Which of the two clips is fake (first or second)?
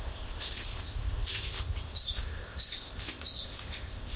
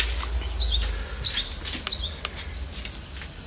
first